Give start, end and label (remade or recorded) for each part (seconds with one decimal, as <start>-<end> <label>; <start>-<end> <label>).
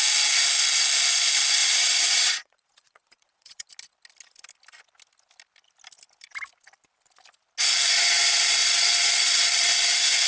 0.0-1.6 recorded; 1.6-3.7 remade; 3.7-8.6 recorded; 8.6-9.7 remade; 9.7-10.3 recorded